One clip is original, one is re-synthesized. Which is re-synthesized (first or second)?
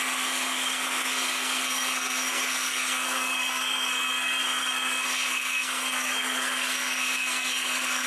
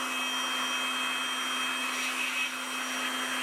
first